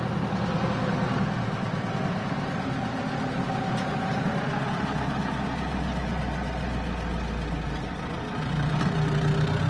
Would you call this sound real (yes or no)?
yes